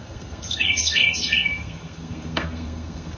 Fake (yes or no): yes